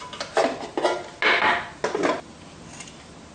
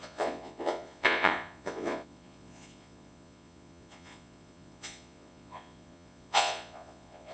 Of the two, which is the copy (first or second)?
second